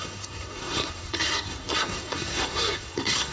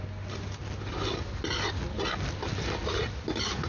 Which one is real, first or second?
second